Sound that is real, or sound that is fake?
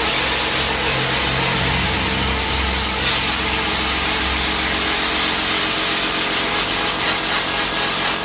real